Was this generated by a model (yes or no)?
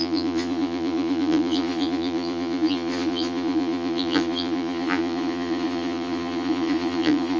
yes